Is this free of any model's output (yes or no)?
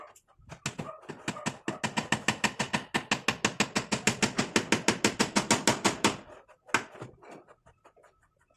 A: yes